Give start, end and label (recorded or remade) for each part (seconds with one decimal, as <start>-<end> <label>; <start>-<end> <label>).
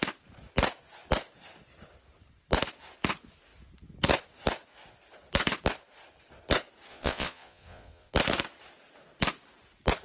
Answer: 0.0-6.9 recorded; 6.9-8.1 remade; 8.1-10.0 recorded